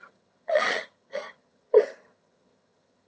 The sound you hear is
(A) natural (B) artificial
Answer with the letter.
B